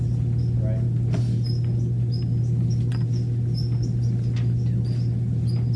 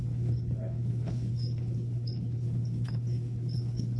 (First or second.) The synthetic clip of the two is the second